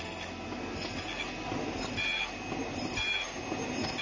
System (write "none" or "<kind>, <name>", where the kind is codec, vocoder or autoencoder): none